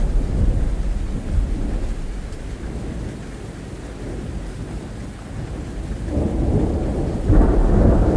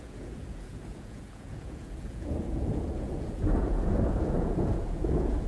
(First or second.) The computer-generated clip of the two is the second